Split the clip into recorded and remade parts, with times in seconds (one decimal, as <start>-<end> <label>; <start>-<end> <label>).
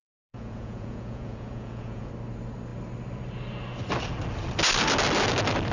0.0-2.1 remade; 2.1-5.7 recorded